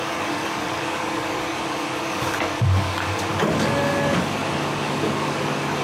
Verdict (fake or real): fake